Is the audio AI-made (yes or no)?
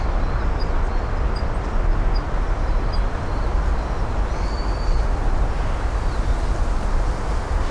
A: no